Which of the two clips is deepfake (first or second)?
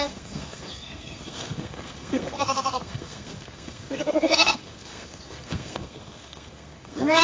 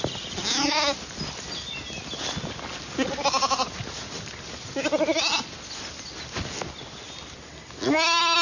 first